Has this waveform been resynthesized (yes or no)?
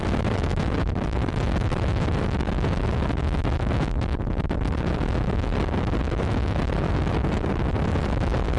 yes